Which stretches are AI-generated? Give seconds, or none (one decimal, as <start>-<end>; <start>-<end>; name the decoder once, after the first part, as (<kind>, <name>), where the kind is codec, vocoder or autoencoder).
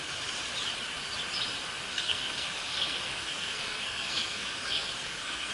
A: 1.9-5.5 (codec, SNAC)